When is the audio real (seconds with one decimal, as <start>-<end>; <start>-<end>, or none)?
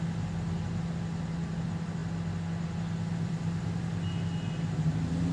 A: 0.0-5.3